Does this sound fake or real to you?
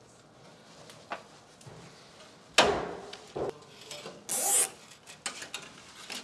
real